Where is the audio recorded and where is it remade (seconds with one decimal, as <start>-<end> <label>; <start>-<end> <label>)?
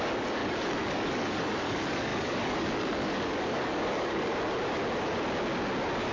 0.0-4.3 remade; 4.3-6.1 recorded